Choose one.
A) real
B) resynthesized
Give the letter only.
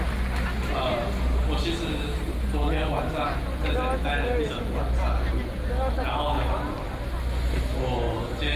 A